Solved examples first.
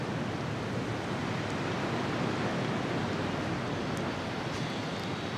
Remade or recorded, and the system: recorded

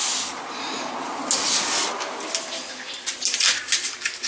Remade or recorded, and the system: recorded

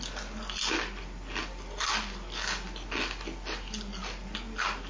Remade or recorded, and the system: recorded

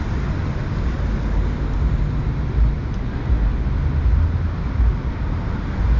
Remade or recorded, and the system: recorded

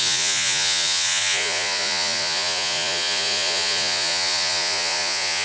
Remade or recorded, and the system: remade, vocoder, Vocos